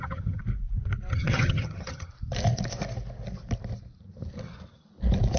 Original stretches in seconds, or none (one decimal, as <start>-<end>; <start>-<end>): 0.4-1.1; 2.1-5.4